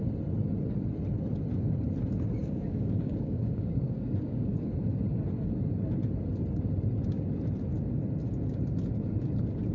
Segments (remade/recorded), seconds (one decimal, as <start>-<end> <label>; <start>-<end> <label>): 0.0-2.4 recorded; 2.4-4.7 remade; 4.7-9.7 recorded